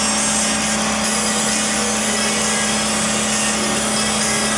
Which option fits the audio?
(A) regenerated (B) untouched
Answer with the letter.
B